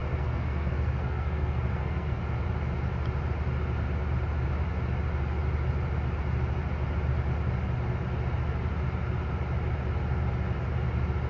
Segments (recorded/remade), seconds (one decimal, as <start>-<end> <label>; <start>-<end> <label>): 0.0-2.2 remade; 2.2-11.3 recorded